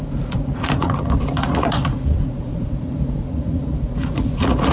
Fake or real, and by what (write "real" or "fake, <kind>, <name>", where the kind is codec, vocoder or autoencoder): fake, vocoder, Vocos